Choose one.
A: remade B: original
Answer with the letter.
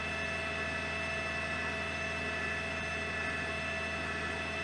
B